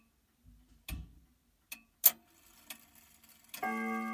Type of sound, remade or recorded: recorded